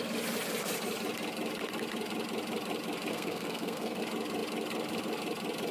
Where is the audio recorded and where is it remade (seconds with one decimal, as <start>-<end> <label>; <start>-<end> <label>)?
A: 0.0-3.1 recorded; 3.1-4.0 remade; 4.0-5.7 recorded